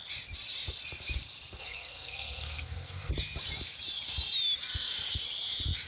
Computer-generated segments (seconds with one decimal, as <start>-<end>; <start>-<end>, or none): 1.6-3.1